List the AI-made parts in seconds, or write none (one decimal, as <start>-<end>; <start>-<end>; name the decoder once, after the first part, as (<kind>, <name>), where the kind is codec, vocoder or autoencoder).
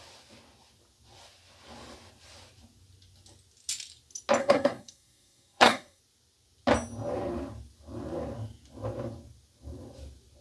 4.4-6.0 (codec, SNAC)